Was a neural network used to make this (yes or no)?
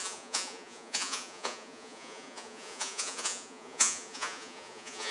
yes